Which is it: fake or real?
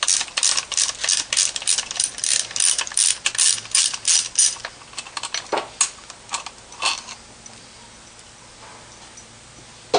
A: real